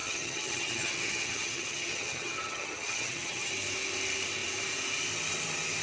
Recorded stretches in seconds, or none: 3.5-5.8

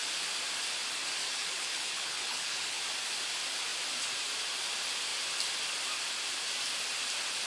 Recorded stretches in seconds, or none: 0.0-1.2; 2.8-7.5